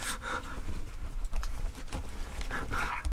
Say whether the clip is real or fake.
real